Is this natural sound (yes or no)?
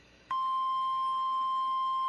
no